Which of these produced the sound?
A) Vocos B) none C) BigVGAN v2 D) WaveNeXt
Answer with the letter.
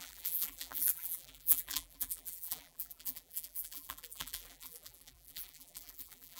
C